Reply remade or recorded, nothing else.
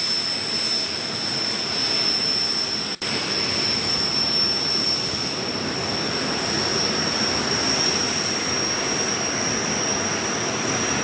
recorded